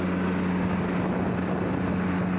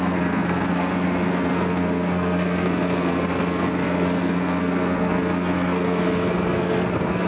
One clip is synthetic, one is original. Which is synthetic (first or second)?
second